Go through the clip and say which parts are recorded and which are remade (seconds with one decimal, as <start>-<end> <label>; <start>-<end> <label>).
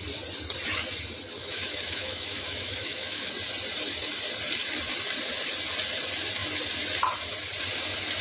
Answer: 0.0-1.4 recorded; 1.4-3.3 remade; 3.3-8.2 recorded